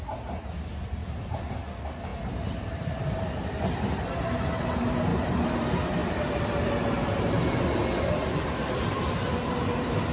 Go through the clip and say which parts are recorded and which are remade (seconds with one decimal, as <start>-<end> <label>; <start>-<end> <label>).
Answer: 0.0-1.0 recorded; 1.0-1.5 remade; 1.5-2.1 recorded; 2.1-4.1 remade; 4.1-5.1 recorded; 5.1-5.6 remade; 5.6-10.1 recorded

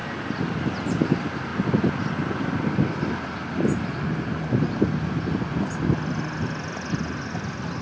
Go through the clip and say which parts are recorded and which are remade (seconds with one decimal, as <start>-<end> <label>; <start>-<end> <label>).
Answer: 0.0-7.8 recorded

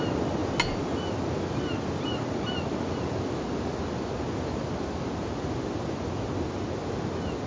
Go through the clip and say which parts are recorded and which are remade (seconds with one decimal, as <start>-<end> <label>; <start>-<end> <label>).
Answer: 0.0-7.5 recorded

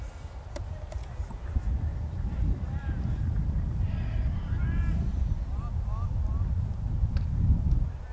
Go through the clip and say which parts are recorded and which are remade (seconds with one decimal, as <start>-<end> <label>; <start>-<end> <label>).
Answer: 0.0-1.9 recorded; 1.9-3.7 remade; 3.7-8.1 recorded

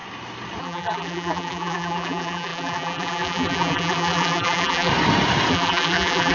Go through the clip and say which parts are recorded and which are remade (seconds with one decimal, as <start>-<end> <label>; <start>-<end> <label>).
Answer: 0.0-0.6 recorded; 0.6-4.9 remade; 4.9-5.5 recorded; 5.5-6.3 remade

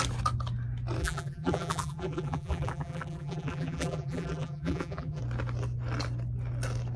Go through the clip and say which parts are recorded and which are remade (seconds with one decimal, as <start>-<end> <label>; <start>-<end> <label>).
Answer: 0.0-1.0 recorded; 1.0-5.2 remade; 5.2-7.0 recorded

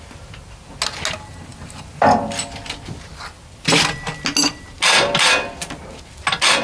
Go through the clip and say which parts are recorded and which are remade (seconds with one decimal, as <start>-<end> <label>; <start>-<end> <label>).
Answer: 0.0-6.6 recorded

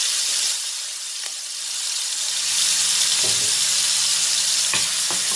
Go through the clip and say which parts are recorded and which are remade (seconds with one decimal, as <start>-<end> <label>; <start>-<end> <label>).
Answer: 0.0-0.7 remade; 0.7-5.4 recorded